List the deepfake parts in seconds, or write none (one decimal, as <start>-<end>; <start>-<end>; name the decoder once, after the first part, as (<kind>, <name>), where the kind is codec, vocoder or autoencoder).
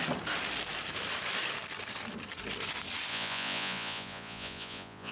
3.1-5.1 (vocoder, Vocos)